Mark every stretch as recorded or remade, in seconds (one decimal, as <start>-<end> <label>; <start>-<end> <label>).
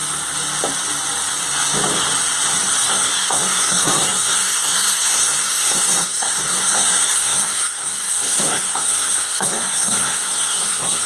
0.0-2.9 recorded; 2.9-11.1 remade